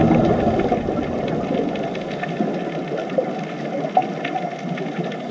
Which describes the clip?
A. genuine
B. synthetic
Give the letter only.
A